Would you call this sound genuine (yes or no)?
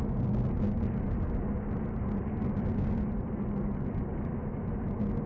yes